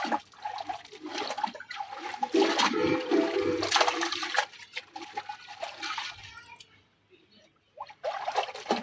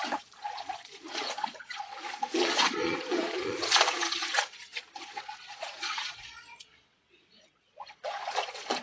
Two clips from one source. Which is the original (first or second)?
first